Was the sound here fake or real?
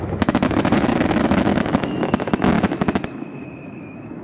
fake